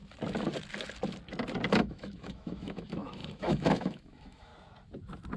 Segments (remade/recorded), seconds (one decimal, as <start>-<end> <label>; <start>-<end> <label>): 0.0-1.7 recorded; 1.7-4.5 remade; 4.5-5.4 recorded